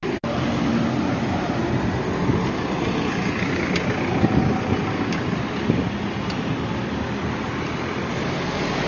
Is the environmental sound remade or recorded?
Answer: recorded